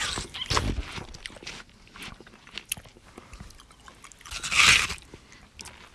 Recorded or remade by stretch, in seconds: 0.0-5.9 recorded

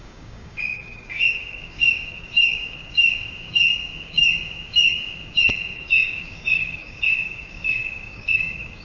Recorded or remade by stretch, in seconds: 0.0-8.8 remade

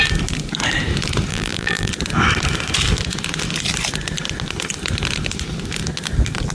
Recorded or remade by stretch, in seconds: 0.0-1.3 recorded; 1.3-1.9 remade; 1.9-6.5 recorded

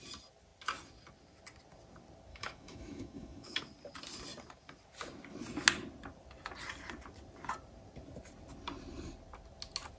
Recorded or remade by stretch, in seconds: 0.0-2.3 recorded; 2.3-3.6 remade; 3.6-10.0 recorded

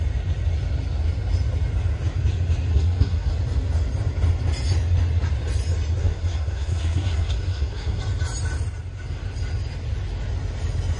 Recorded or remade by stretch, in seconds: 0.0-2.7 recorded; 2.7-3.3 remade; 3.3-6.0 recorded; 6.0-8.0 remade; 8.0-11.0 recorded

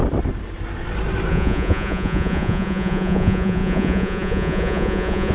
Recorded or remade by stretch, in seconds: 0.0-1.3 recorded; 1.3-5.3 remade

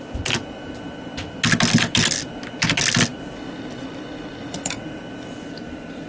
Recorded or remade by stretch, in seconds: 0.0-4.4 recorded; 4.4-5.0 remade; 5.0-6.1 recorded